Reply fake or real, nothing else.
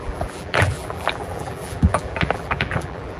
fake